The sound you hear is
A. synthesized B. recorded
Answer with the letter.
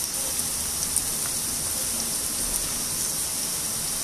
B